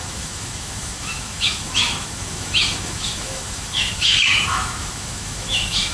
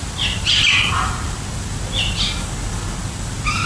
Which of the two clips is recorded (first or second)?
second